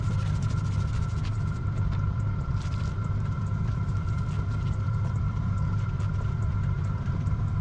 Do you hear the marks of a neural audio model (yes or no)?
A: yes